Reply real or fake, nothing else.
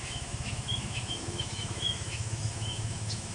fake